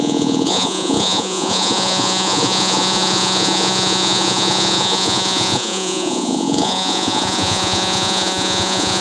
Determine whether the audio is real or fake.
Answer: fake